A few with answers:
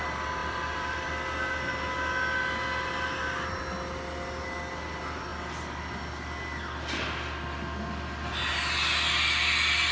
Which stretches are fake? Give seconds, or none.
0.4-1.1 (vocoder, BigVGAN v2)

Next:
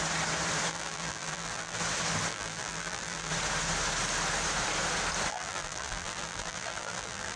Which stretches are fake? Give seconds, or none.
0.7-1.8 (vocoder, BigVGAN v2); 2.3-3.3; 5.3-7.4

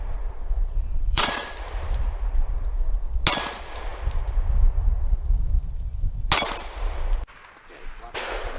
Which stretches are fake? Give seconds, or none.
0.6-1.6 (vocoder, Vocos)

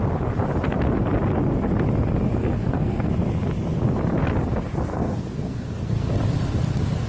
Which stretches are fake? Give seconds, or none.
2.4-3.1 (codec, SNAC); 4.9-6.1